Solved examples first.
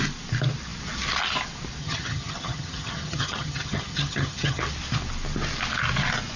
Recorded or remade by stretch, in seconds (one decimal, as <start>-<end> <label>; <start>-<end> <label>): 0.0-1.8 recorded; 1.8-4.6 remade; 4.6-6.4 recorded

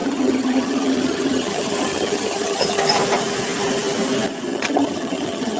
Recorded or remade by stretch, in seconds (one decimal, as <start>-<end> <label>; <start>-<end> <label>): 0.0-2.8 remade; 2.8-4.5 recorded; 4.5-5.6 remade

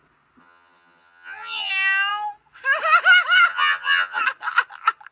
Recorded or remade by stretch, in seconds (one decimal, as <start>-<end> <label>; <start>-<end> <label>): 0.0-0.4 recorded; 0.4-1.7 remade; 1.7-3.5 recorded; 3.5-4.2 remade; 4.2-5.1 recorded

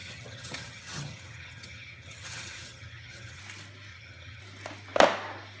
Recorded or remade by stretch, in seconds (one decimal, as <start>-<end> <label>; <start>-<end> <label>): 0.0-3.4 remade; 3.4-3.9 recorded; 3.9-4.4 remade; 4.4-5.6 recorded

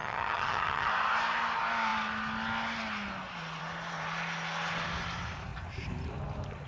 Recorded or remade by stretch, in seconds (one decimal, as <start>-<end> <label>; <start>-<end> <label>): 0.0-0.9 remade; 0.9-6.7 recorded

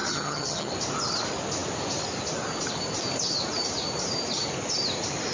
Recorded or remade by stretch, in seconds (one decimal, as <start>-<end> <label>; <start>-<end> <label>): 0.0-0.7 remade; 0.7-5.3 recorded

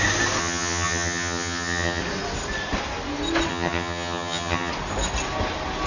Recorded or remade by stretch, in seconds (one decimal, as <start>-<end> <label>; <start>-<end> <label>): 0.0-0.4 recorded; 0.4-2.0 remade; 2.0-3.5 recorded; 3.5-4.7 remade; 4.7-5.9 recorded

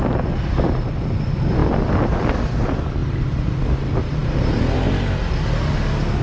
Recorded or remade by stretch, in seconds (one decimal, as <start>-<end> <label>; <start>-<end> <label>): 0.0-6.2 recorded